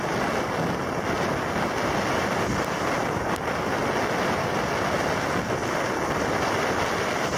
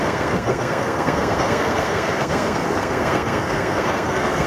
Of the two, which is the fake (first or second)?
second